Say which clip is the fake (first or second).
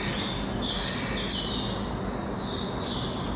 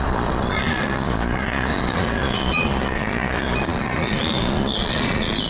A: second